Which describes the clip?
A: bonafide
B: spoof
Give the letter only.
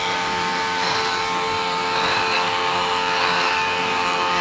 B